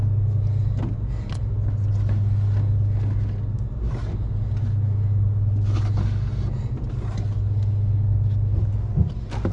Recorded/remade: recorded